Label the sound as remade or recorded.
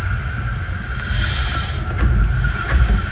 recorded